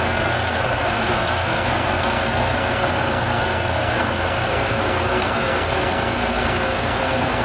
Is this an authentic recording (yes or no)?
no